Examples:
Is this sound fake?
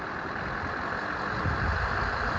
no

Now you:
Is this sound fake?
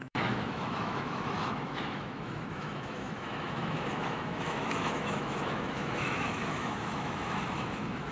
yes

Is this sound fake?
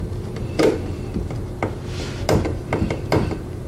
no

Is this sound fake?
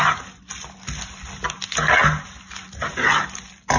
no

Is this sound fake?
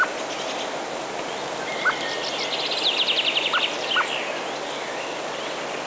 no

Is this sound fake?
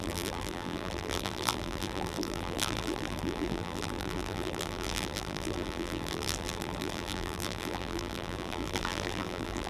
yes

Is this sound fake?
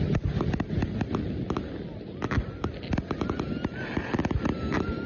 no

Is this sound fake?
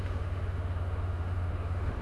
yes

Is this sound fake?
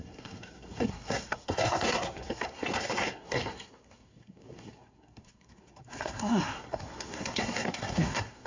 yes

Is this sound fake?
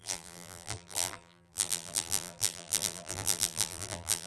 yes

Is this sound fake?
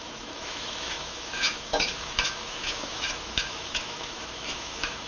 yes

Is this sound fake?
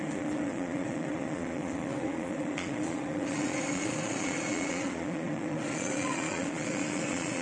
yes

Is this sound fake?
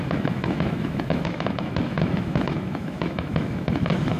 yes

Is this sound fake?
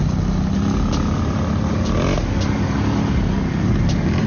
no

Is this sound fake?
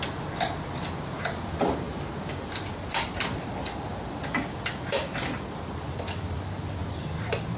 no